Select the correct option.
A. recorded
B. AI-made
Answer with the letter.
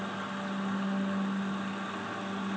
A